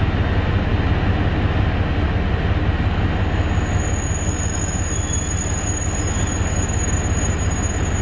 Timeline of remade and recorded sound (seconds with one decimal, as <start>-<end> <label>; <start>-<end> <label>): 0.0-8.0 recorded